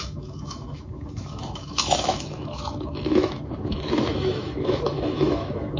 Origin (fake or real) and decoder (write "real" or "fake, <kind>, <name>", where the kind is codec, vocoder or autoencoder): fake, autoencoder, DAC-VAE